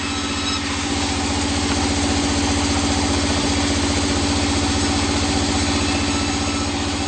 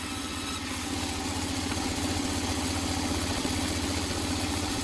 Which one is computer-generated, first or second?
second